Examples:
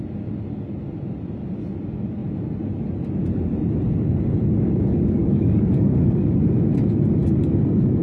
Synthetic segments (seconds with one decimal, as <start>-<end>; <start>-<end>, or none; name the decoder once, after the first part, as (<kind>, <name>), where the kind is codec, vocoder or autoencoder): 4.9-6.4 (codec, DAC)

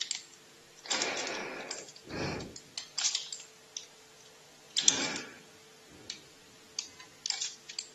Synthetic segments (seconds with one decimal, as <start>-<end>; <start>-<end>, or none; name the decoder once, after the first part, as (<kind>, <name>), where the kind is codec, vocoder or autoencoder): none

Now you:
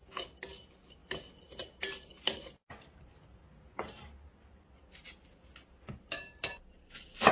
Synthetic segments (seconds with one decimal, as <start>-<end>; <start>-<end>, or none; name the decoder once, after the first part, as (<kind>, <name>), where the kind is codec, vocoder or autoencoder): none